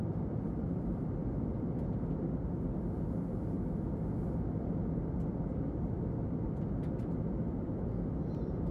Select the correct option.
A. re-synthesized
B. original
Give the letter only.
B